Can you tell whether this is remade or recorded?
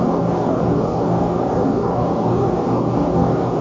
remade